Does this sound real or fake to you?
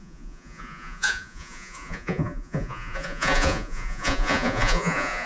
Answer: fake